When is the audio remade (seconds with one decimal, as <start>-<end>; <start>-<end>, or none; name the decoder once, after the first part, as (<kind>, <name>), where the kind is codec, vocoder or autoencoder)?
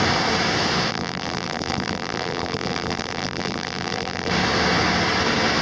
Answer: 0.9-4.3 (vocoder, BigVGAN v2)